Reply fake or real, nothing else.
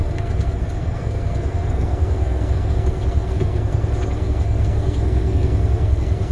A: fake